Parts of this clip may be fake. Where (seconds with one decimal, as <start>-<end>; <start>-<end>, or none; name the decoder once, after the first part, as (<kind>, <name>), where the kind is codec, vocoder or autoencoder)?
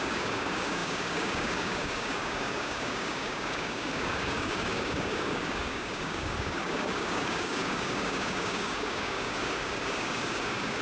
0.0-10.8 (codec, DAC)